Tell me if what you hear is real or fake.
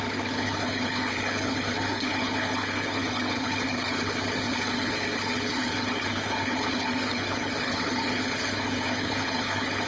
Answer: fake